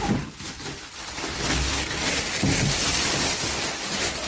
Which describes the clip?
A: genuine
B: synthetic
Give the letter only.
A